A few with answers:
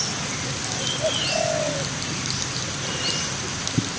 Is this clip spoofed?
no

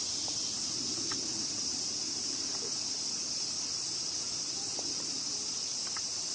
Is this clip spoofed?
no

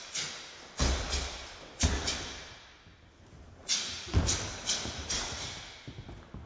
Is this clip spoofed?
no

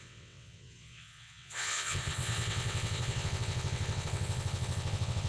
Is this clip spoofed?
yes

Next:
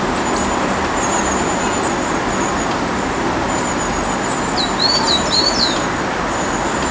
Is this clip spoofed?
no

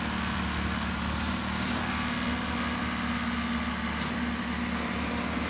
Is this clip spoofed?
no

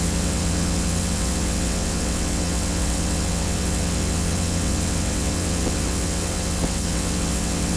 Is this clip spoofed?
yes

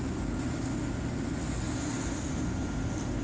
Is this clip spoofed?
no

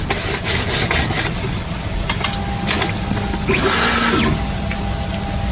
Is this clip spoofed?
no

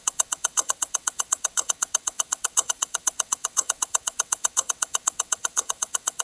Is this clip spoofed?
yes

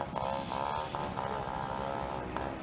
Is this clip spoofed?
no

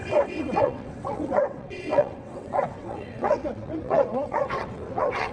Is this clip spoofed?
yes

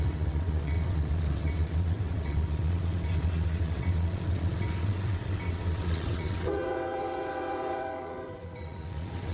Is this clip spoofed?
yes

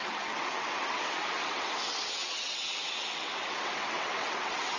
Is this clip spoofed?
yes